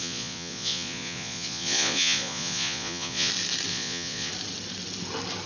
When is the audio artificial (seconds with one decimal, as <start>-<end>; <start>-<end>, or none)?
0.0-3.3; 3.7-4.3

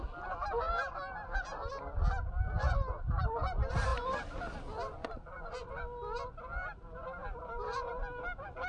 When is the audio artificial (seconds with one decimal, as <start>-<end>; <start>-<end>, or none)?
none

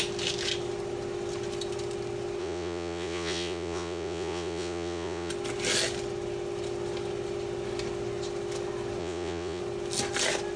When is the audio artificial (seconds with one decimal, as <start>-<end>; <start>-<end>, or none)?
2.4-5.3; 9.0-9.6

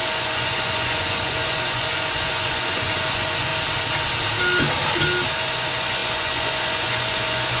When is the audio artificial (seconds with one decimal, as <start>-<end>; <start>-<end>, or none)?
0.0-3.5; 5.4-7.6

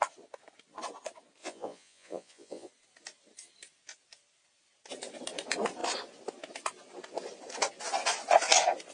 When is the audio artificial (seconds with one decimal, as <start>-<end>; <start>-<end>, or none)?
1.4-2.7

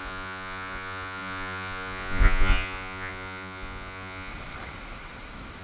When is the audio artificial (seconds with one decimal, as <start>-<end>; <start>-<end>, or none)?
0.0-4.3

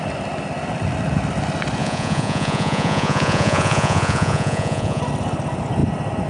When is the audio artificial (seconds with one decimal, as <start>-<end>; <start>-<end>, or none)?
1.8-5.0